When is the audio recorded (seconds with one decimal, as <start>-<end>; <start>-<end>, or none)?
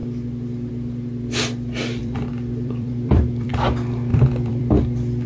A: 0.0-2.0; 3.5-4.1; 4.7-5.3